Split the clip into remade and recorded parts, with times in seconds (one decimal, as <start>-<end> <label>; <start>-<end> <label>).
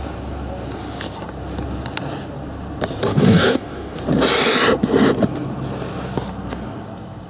0.0-3.1 recorded; 3.1-4.0 remade; 4.0-7.3 recorded